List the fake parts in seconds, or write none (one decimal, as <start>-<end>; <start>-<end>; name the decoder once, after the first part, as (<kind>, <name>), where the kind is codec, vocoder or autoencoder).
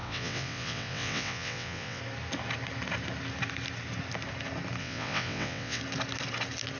0.0-2.0 (vocoder, WaveNeXt); 4.8-5.8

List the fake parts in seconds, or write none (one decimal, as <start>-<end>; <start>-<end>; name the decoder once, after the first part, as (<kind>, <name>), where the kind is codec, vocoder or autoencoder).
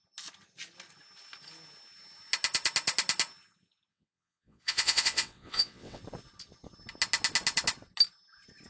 3.9-6.0 (vocoder, WaveNeXt)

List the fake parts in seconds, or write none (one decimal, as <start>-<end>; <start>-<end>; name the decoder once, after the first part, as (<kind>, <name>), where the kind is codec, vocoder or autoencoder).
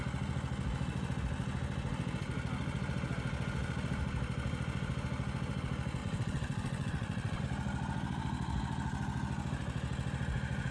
6.0-7.4 (vocoder, WaveNeXt)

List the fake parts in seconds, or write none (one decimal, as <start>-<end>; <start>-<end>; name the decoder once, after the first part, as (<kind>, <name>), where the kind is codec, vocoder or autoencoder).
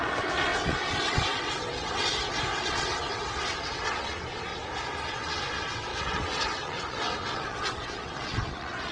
0.0-2.1 (vocoder, WaveNeXt); 2.6-4.5; 5.1-8.9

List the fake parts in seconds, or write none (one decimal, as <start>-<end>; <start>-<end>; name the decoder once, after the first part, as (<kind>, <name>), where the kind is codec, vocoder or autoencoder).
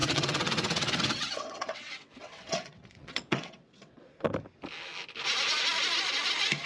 0.0-4.0 (vocoder, WaveNeXt)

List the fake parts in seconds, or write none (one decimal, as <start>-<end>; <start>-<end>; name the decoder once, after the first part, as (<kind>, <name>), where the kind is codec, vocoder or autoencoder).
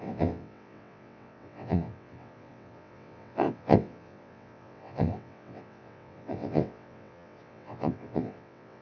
0.0-8.8 (vocoder, WaveNeXt)